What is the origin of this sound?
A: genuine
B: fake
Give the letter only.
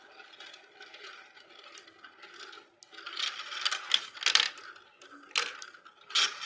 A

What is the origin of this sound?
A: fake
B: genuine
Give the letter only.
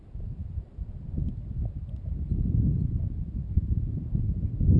A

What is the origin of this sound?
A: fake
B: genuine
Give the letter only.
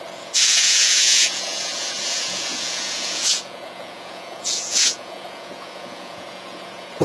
A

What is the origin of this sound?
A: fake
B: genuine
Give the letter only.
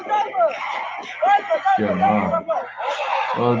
B